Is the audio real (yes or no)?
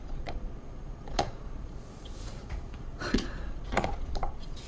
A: no